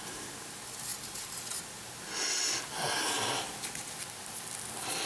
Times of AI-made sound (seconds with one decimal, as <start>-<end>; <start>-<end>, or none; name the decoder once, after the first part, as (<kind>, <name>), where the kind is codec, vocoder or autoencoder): none